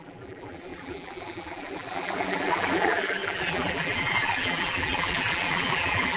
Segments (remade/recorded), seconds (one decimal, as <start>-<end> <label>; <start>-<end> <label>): 0.0-6.2 remade